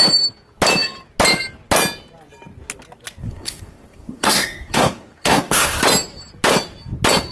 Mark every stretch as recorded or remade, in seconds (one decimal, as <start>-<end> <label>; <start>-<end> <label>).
0.0-3.2 recorded; 3.2-5.8 remade; 5.8-7.3 recorded